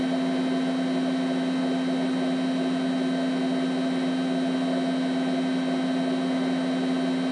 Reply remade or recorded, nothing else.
recorded